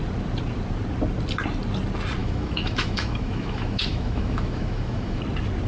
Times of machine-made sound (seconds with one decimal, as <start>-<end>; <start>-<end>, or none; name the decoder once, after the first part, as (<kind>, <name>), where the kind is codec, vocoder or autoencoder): 2.2-5.2 (autoencoder, DAC-VAE)